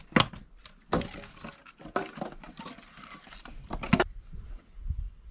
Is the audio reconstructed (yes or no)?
no